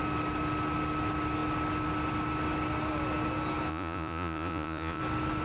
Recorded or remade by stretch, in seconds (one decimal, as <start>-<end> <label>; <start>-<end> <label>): 0.0-3.7 recorded; 3.7-5.0 remade; 5.0-5.4 recorded